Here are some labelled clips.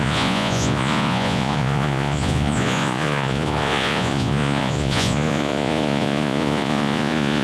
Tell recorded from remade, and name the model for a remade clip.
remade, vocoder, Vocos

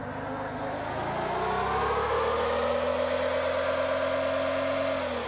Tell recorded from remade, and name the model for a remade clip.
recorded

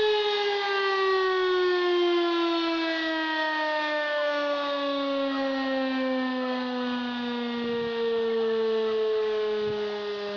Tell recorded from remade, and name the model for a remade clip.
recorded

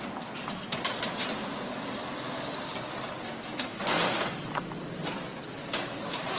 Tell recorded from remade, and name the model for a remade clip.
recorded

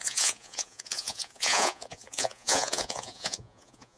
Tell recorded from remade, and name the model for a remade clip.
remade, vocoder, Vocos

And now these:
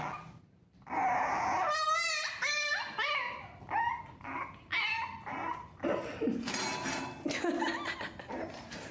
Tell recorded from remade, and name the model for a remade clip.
recorded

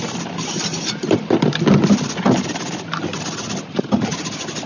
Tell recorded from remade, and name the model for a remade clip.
recorded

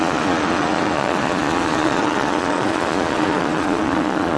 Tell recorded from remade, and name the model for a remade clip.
remade, vocoder, Vocos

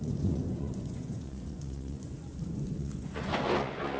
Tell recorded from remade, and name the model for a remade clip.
remade, vocoder, Vocos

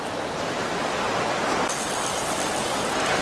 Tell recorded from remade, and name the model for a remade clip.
recorded